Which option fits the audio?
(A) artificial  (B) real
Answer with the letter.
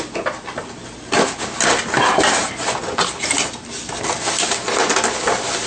B